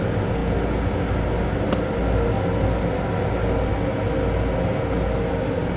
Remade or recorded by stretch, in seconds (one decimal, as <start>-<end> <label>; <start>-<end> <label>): 0.0-5.8 recorded